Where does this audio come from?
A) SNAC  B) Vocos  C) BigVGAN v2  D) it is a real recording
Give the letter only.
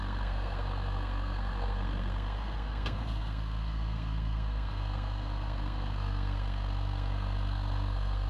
A